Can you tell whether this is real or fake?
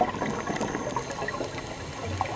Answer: real